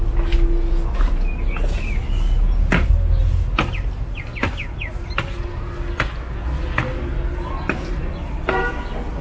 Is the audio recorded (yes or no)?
yes